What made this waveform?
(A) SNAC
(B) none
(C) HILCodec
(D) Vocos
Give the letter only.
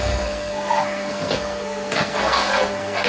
A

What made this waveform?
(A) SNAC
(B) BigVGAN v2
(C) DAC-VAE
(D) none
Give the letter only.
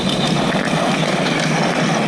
D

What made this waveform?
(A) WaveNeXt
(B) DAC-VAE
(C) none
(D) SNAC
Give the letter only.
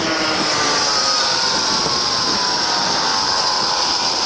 C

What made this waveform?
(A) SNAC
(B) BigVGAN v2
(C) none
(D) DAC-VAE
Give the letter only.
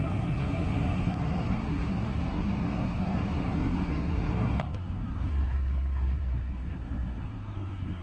A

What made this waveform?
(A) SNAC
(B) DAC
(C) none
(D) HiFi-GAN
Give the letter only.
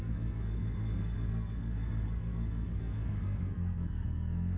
A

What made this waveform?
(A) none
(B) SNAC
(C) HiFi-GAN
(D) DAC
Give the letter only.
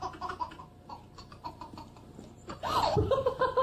A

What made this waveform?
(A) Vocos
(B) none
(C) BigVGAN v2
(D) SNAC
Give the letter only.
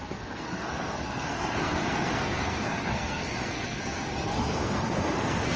D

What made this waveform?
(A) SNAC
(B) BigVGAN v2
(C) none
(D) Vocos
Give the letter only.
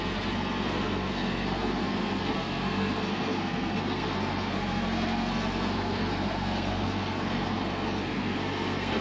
A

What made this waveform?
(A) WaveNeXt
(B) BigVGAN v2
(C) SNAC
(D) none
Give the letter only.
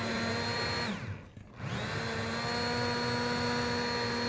D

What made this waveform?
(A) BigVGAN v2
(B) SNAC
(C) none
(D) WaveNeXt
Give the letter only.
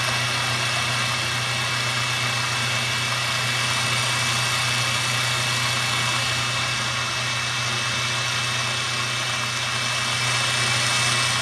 C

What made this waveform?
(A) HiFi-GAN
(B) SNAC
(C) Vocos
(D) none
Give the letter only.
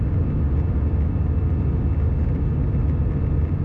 D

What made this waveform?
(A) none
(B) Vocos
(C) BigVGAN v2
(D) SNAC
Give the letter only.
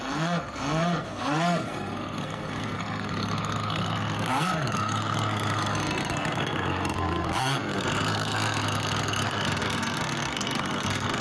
D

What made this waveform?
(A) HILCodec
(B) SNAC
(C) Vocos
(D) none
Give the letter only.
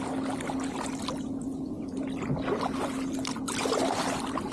D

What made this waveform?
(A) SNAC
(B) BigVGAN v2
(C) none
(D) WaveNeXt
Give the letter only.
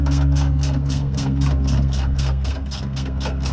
A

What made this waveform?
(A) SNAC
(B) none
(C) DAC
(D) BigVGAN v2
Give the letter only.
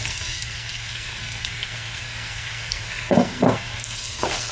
A